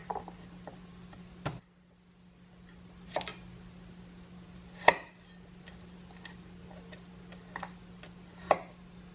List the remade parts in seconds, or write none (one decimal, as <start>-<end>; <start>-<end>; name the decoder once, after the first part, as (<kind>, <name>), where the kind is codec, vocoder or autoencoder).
none